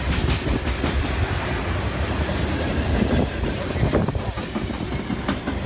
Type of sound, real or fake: real